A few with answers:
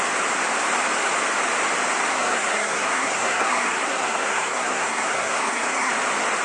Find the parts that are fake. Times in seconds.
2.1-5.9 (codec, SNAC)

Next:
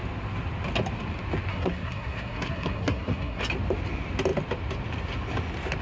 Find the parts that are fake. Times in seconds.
1.5-3.4 (codec, SNAC)

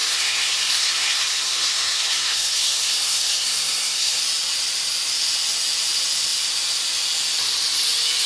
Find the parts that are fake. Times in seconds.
0.0-4.2 (codec, SNAC)

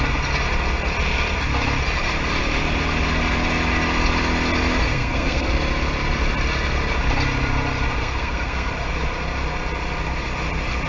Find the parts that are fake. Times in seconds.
4.9-5.5 (codec, SNAC); 8.0-8.7